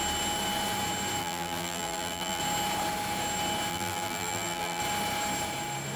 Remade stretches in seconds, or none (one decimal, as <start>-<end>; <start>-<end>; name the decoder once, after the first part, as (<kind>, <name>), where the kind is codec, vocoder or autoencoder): 1.2-2.4 (vocoder, BigVGAN v2); 3.7-4.8